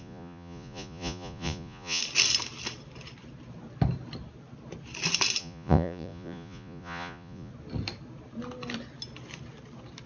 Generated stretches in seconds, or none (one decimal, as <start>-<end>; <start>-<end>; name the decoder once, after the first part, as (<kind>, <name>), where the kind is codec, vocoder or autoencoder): 0.0-2.0 (vocoder, Vocos); 5.4-7.5